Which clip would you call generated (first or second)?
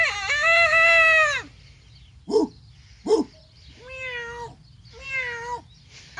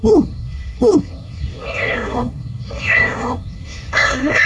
second